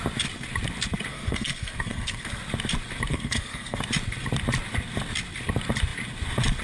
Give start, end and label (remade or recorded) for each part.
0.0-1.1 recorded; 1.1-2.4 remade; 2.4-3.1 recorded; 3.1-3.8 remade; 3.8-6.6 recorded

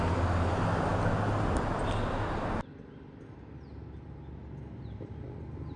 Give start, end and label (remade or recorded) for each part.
0.0-5.8 recorded

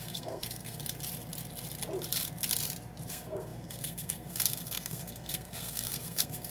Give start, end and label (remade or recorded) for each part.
0.0-0.8 remade; 0.8-3.1 recorded; 3.1-6.5 remade

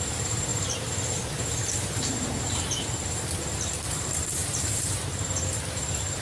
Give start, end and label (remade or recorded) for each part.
0.0-6.2 remade

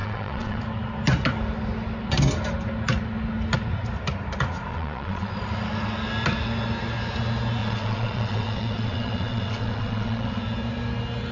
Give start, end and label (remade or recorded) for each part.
0.0-0.6 remade; 0.6-4.7 recorded; 4.7-5.3 remade; 5.3-7.6 recorded; 7.6-10.4 remade; 10.4-11.3 recorded